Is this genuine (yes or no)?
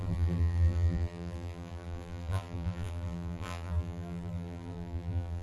no